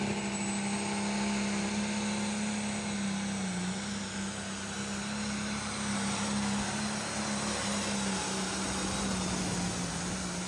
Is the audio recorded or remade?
recorded